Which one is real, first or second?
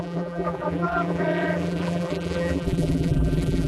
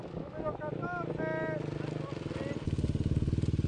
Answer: second